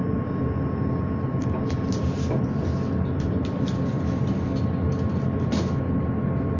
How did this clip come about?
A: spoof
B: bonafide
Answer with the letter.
B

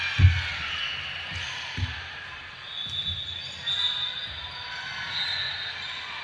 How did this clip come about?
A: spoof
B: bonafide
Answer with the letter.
B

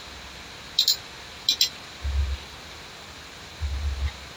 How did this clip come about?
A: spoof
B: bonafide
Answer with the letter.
B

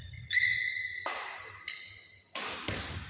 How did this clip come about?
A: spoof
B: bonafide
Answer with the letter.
A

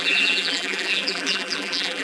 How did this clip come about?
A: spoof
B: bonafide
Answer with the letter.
A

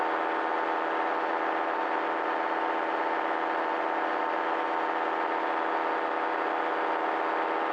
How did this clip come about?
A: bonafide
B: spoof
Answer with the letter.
A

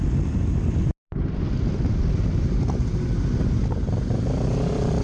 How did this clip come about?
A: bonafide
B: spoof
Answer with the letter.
B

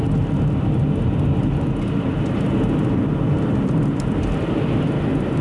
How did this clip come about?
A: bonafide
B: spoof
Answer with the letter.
A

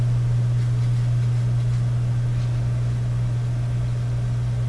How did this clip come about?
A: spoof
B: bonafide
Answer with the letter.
B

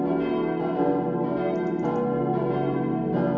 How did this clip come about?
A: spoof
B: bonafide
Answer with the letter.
B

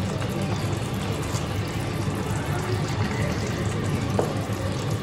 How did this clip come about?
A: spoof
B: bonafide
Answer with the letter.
B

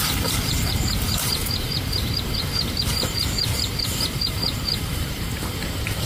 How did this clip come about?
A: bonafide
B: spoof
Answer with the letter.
B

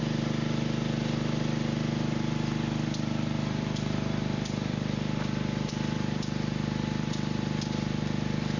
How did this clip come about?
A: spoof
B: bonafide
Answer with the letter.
A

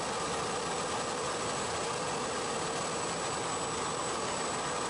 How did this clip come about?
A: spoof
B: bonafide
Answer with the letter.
B